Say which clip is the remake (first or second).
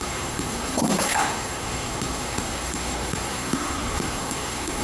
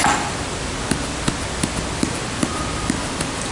first